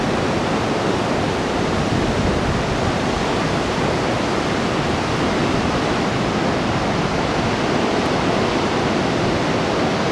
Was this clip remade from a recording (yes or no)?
no